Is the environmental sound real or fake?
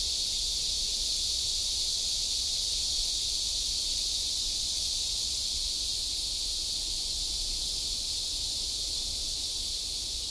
fake